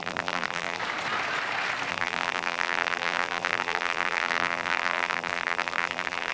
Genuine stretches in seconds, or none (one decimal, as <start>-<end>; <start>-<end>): 0.8-1.9